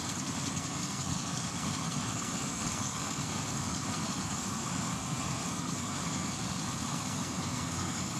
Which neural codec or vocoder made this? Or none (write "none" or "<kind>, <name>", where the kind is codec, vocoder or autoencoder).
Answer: codec, SNAC